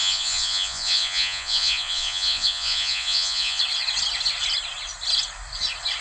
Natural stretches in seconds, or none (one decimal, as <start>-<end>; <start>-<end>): 3.6-6.0